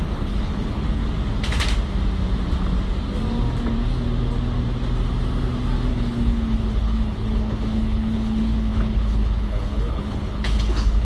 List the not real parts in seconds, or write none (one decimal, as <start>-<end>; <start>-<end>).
0.0-1.0; 5.9-11.0